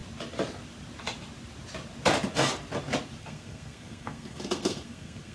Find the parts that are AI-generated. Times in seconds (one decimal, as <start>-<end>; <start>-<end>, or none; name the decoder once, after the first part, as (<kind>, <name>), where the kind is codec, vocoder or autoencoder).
3.2-5.3 (codec, SNAC)